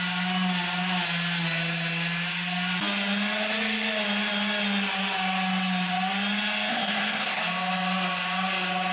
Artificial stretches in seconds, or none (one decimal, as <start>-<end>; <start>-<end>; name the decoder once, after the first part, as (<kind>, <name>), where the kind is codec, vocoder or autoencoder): 6.7-7.4 (codec, SNAC)